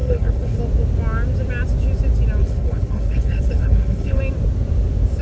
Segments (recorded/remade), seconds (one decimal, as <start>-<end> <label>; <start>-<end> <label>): 0.0-0.6 remade; 0.6-2.4 recorded; 2.4-4.2 remade; 4.2-5.2 recorded